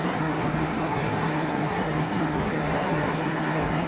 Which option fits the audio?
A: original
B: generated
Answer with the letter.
B